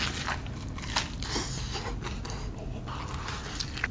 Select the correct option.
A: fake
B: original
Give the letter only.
B